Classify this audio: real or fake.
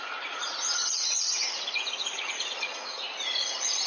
fake